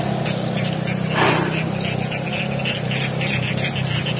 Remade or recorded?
recorded